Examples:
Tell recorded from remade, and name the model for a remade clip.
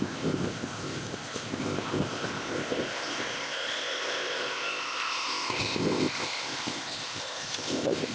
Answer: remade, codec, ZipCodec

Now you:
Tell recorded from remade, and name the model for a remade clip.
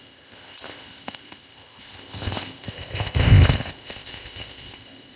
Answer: remade, codec, ZipCodec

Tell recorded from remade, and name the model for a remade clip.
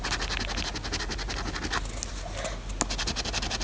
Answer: recorded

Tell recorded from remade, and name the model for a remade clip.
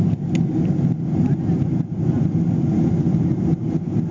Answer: recorded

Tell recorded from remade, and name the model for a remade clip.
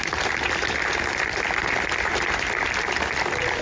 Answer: recorded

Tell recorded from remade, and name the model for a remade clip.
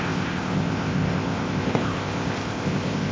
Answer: remade, codec, ZipCodec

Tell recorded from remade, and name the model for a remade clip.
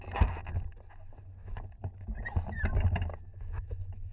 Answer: recorded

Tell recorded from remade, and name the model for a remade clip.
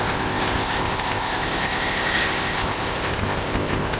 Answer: remade, codec, ZipCodec